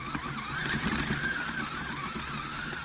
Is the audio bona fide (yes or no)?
yes